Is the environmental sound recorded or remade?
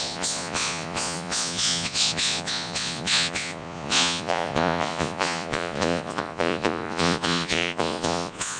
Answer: remade